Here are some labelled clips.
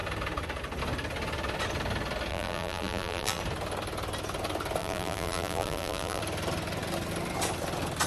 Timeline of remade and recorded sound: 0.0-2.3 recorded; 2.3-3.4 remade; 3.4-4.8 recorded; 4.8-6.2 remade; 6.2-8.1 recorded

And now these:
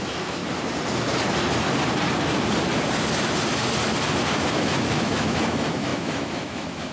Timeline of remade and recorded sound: 0.0-0.4 remade; 0.4-4.5 recorded; 4.5-6.9 remade

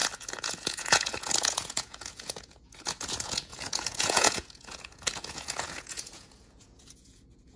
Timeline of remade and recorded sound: 0.0-7.6 remade

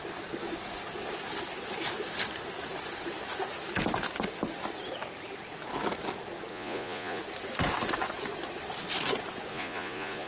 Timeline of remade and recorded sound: 0.0-6.5 recorded; 6.5-7.2 remade; 7.2-9.5 recorded; 9.5-10.3 remade

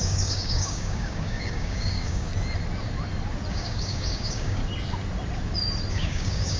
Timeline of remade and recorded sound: 0.0-2.3 remade; 2.3-3.5 recorded; 3.5-4.6 remade; 4.6-5.9 recorded; 5.9-6.6 remade

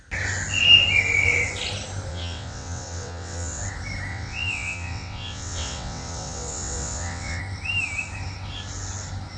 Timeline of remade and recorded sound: 0.0-2.1 recorded; 2.1-3.6 remade; 3.6-4.1 recorded; 4.1-7.4 remade; 7.4-9.4 recorded

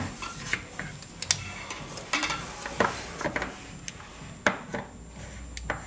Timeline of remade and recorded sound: 0.0-5.9 recorded